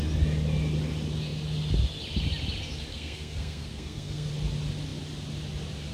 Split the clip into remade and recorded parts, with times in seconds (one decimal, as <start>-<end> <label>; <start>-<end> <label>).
0.0-2.9 recorded; 2.9-4.3 remade; 4.3-5.9 recorded